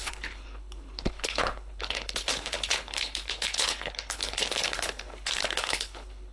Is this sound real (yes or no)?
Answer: no